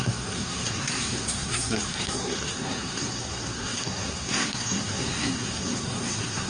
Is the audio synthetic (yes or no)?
yes